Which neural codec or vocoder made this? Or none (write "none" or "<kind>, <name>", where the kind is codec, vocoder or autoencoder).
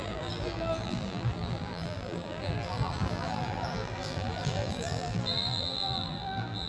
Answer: vocoder, BigVGAN v2